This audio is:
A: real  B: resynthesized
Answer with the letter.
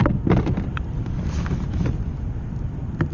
A